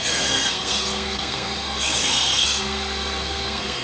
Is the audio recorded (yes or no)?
no